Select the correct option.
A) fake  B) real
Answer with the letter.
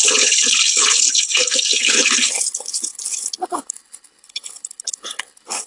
A